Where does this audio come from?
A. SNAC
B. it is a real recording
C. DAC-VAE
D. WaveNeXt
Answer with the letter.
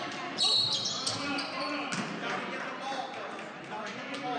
B